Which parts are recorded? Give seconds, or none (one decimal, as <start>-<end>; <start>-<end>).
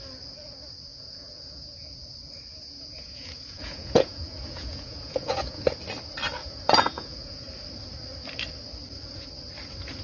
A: 0.0-0.9; 2.0-2.5; 5.8-6.4; 7.4-10.0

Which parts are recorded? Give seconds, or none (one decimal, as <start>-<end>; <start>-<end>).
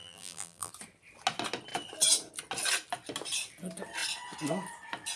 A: 0.7-5.2